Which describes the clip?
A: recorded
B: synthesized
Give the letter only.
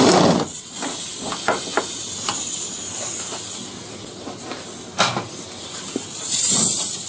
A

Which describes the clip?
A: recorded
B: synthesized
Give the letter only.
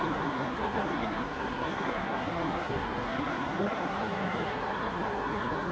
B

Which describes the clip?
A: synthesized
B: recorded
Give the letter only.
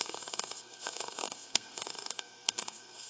A